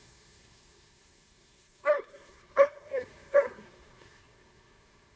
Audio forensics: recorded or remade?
remade